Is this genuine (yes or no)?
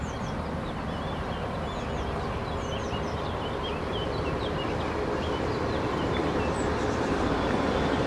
yes